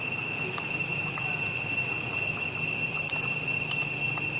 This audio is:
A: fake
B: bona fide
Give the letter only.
B